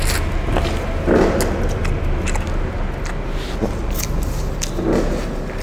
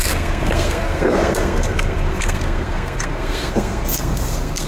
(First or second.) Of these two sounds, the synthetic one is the second